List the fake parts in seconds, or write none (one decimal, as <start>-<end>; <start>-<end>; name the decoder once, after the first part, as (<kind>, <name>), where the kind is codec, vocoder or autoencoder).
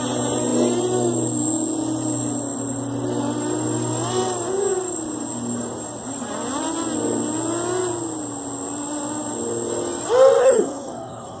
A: 10.4-11.4 (codec, SNAC)